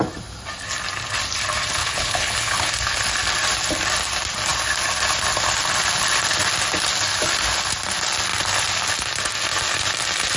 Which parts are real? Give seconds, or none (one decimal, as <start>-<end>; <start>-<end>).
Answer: 0.0-1.8; 2.7-10.4